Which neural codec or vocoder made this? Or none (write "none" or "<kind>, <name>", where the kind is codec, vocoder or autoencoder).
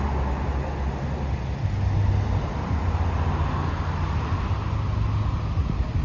none